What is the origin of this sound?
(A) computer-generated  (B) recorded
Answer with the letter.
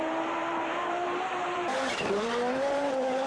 A